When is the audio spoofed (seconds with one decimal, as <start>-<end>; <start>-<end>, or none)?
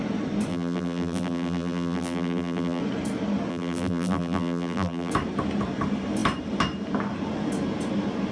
0.5-2.8; 3.5-5.1